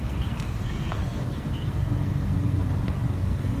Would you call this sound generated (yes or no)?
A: yes